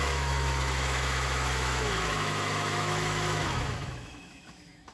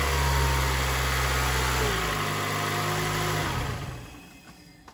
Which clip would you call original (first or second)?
second